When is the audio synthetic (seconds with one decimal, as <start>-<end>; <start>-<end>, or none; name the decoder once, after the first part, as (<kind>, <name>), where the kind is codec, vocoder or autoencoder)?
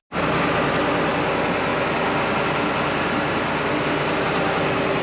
none